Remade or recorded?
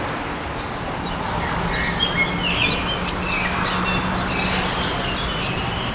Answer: recorded